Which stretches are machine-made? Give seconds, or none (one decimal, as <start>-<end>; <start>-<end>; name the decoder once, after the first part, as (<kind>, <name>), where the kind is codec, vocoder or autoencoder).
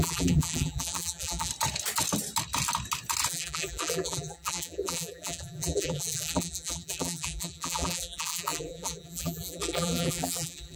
0.0-1.5 (vocoder, BigVGAN v2); 3.3-10.8